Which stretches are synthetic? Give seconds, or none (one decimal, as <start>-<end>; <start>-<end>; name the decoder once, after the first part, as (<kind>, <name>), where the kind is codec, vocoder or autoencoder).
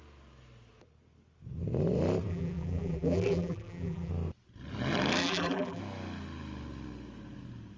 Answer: 2.3-4.1 (vocoder, BigVGAN v2); 5.2-5.8